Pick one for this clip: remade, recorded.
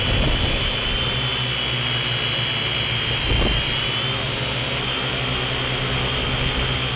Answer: recorded